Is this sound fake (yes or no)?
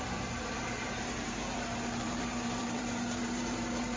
yes